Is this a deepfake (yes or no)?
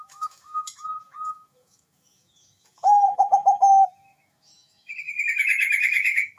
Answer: yes